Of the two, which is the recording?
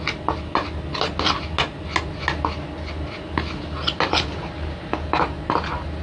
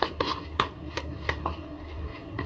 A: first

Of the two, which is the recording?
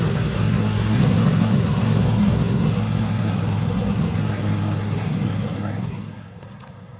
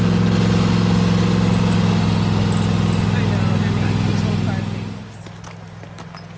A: second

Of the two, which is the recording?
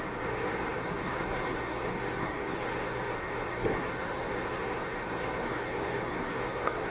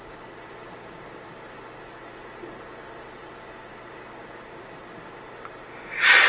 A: second